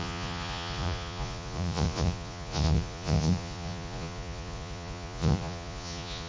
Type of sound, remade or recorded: remade